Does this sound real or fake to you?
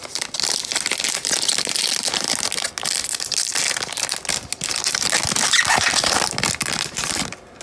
real